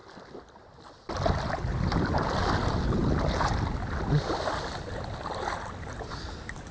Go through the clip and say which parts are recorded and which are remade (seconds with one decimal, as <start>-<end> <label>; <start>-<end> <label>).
0.0-6.7 recorded